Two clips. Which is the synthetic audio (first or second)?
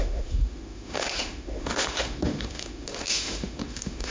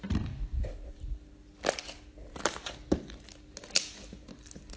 first